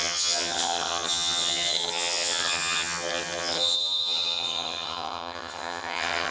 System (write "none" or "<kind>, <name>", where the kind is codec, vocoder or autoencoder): vocoder, HiFi-GAN